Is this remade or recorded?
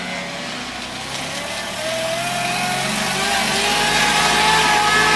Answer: recorded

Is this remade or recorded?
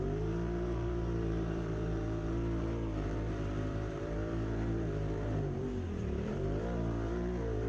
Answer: remade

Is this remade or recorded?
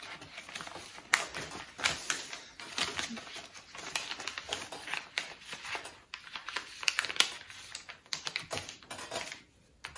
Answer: recorded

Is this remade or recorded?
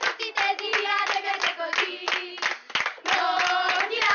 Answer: recorded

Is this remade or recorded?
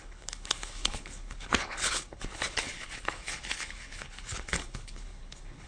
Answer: remade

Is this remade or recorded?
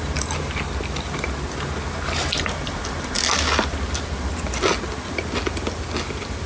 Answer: recorded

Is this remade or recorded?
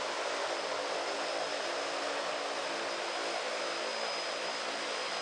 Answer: recorded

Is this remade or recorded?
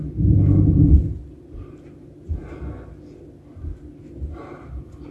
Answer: recorded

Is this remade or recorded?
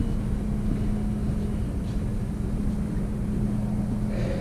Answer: recorded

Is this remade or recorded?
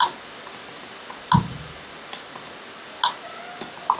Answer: recorded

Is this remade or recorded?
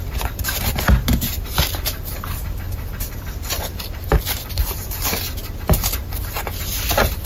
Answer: recorded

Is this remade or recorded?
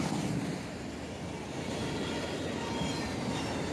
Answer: recorded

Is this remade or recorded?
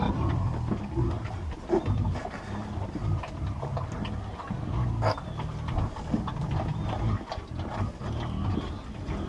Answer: recorded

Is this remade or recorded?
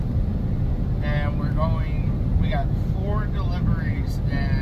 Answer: recorded